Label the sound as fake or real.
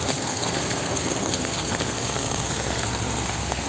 fake